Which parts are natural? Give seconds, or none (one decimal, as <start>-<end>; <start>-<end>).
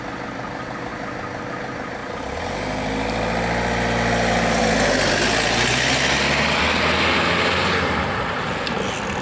0.0-9.2